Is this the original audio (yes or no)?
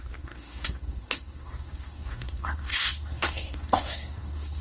no